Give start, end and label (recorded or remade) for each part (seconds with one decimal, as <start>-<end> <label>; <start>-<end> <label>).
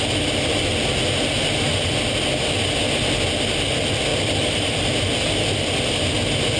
0.0-4.1 recorded; 4.1-4.7 remade; 4.7-6.6 recorded